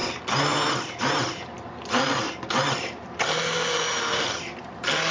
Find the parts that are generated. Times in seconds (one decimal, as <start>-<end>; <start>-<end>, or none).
none